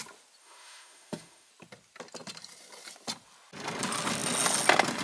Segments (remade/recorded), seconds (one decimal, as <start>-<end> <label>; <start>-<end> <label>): 0.0-0.4 recorded; 0.4-1.5 remade; 1.5-5.0 recorded